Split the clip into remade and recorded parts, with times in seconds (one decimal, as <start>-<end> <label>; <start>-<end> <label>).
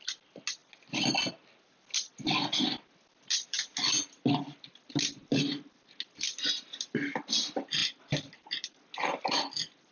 0.0-9.9 recorded